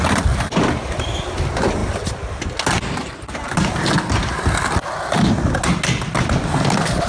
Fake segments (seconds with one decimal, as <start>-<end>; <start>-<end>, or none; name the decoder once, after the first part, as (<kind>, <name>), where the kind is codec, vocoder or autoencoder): none